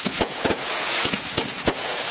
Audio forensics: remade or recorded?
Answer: remade